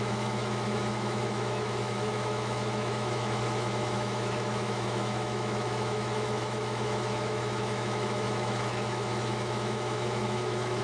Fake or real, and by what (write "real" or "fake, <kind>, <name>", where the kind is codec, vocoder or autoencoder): fake, autoencoder, DAC-VAE